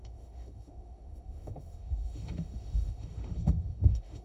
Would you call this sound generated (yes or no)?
yes